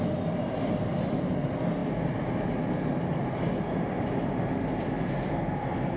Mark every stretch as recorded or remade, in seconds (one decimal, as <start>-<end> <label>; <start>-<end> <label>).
0.0-6.0 recorded